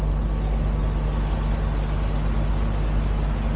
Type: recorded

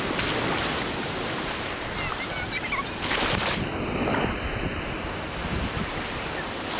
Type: recorded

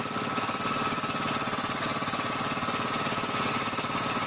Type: recorded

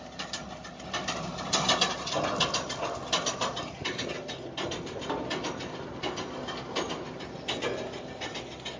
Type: recorded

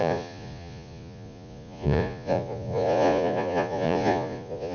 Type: remade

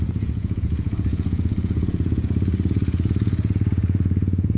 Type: remade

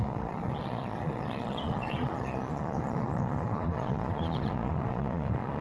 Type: remade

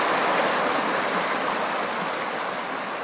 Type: recorded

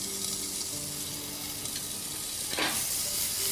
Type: recorded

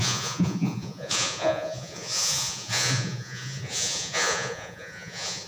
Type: remade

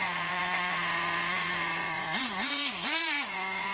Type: remade